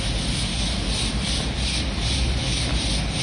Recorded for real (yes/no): yes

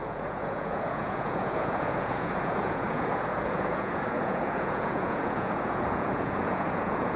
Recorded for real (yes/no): no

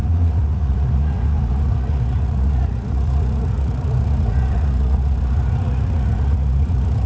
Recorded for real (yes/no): no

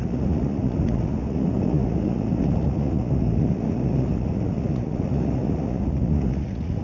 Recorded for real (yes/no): no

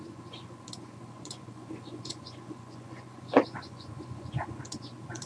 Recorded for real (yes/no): no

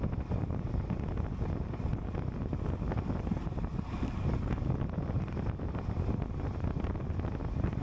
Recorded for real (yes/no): yes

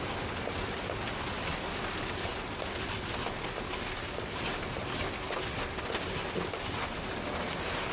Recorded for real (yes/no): yes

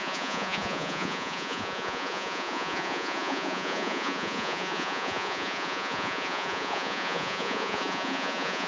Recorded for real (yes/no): no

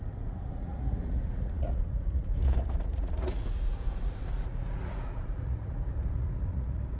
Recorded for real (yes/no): no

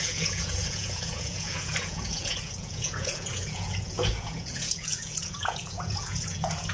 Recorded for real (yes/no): no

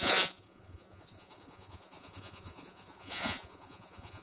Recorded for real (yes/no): no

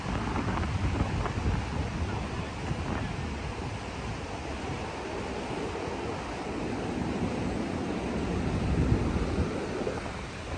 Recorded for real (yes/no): yes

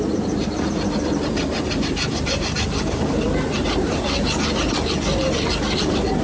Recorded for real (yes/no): yes